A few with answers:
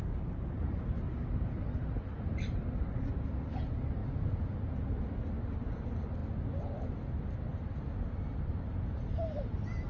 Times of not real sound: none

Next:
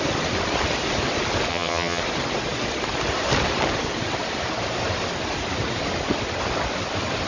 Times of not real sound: 1.5-2.0 (vocoder, HiFi-GAN)

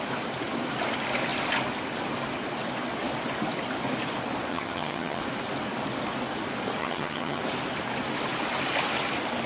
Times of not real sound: 4.5-5.2 (vocoder, HiFi-GAN); 6.8-7.4